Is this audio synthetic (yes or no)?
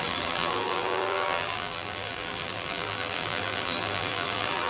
yes